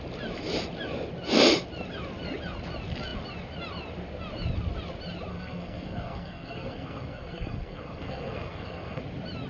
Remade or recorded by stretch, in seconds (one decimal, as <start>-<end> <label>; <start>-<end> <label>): 0.0-5.3 recorded; 5.3-9.0 remade; 9.0-9.5 recorded